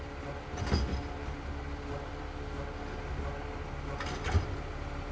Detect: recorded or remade recorded